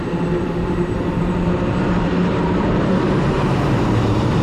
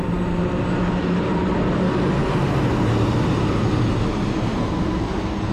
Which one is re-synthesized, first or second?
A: first